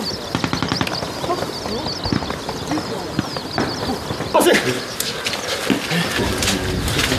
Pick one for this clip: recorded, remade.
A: recorded